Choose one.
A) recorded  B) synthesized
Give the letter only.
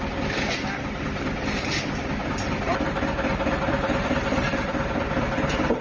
B